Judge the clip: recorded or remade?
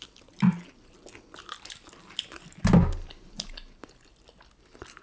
recorded